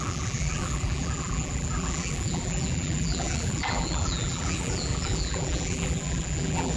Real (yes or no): no